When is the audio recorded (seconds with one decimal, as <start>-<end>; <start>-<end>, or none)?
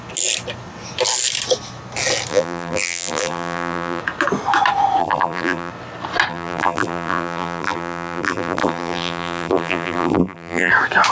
0.0-2.3; 4.0-5.0; 5.7-6.3; 10.7-11.1